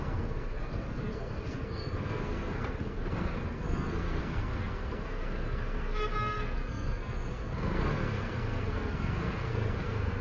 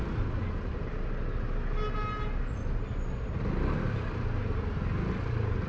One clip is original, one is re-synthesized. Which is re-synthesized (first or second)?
first